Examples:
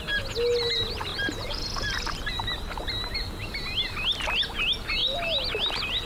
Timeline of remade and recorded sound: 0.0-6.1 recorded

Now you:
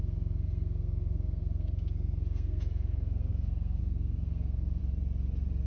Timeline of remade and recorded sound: 0.0-4.8 remade; 4.8-5.7 recorded

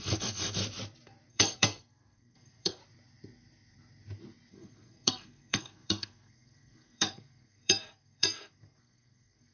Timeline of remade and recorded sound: 0.0-0.6 remade; 0.6-1.3 recorded; 1.3-2.8 remade; 2.8-4.5 recorded; 4.5-9.5 remade

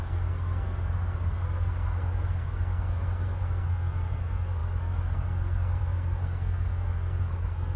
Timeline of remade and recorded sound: 0.0-7.8 remade

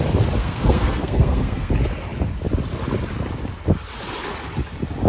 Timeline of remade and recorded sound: 0.0-0.4 recorded; 0.4-1.7 remade; 1.7-5.1 recorded